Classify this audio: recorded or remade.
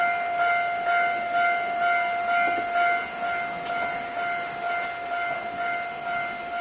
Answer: recorded